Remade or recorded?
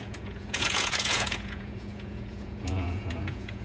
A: remade